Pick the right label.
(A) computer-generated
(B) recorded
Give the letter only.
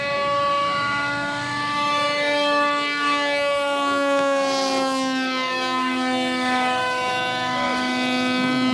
A